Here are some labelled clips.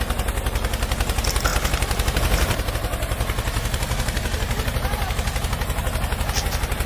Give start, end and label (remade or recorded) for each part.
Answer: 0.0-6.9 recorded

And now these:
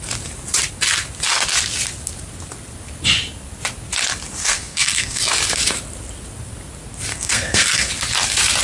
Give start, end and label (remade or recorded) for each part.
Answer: 0.0-4.4 recorded; 4.4-5.2 remade; 5.2-7.1 recorded; 7.1-7.9 remade; 7.9-8.6 recorded